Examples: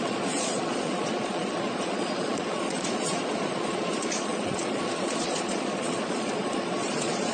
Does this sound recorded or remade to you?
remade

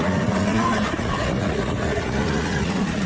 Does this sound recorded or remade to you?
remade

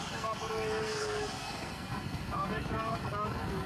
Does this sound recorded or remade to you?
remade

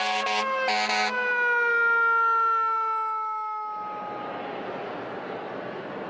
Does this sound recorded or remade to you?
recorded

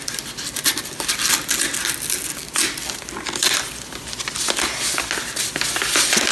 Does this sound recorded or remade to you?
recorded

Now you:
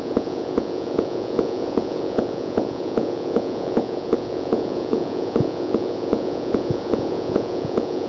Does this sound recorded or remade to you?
remade